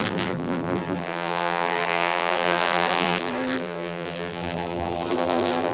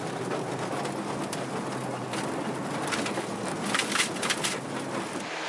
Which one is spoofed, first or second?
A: first